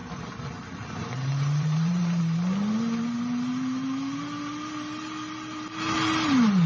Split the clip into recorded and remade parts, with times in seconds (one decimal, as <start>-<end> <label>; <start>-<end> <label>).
0.0-2.2 remade; 2.2-6.7 recorded